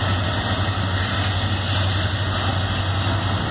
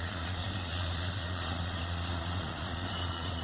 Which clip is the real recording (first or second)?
first